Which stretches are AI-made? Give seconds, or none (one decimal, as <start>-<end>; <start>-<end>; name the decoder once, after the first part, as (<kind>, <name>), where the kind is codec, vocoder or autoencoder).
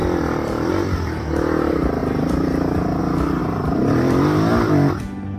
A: 0.0-0.7 (vocoder, BigVGAN v2); 2.0-3.0; 3.4-4.5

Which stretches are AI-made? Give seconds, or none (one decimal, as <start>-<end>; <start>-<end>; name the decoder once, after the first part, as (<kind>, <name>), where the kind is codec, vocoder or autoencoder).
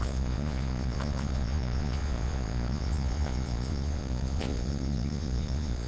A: 0.0-5.9 (vocoder, Vocos)